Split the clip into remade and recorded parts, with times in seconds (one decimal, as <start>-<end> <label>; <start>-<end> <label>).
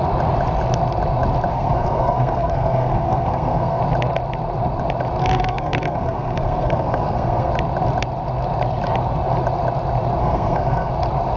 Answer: 0.0-1.5 recorded; 1.5-3.8 remade; 3.8-5.2 recorded; 5.2-7.5 remade; 7.5-10.2 recorded; 10.2-10.9 remade; 10.9-11.4 recorded